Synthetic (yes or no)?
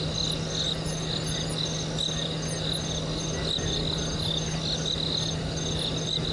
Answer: no